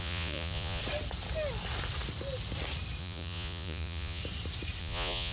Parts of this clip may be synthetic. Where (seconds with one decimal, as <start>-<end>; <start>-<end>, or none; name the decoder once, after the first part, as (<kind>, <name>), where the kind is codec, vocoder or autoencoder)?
0.0-0.8 (vocoder, Vocos); 3.0-4.2; 4.8-5.3